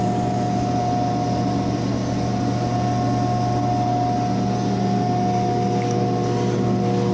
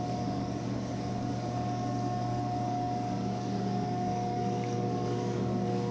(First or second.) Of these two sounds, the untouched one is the first